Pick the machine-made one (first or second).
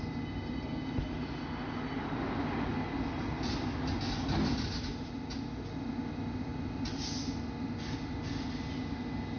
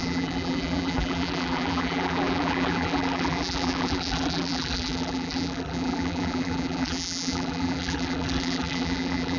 second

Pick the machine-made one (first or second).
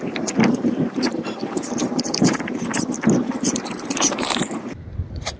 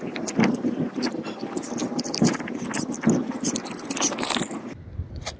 first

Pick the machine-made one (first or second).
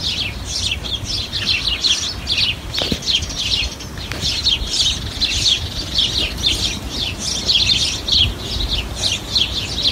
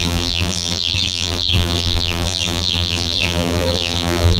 second